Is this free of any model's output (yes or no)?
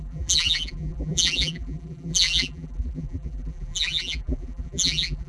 no